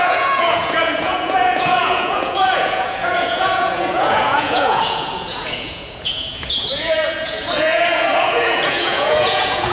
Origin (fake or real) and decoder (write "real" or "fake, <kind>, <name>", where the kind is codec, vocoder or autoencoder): fake, vocoder, Vocos